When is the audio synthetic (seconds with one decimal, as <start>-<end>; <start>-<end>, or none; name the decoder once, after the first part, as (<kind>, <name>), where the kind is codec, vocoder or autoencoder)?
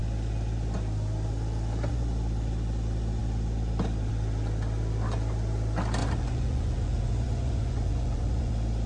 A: 6.0-8.5 (vocoder, Vocos)